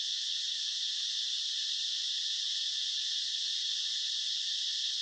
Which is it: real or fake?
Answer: real